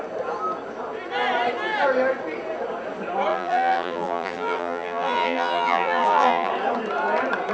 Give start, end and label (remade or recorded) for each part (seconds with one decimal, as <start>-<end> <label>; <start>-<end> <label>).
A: 0.0-3.3 recorded; 3.3-6.5 remade; 6.5-7.5 recorded